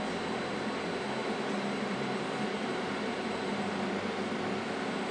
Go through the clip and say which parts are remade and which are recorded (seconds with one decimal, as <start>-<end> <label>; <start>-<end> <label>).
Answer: 0.0-1.2 recorded; 1.2-4.3 remade; 4.3-5.1 recorded